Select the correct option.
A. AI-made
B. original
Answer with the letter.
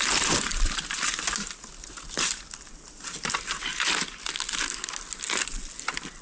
B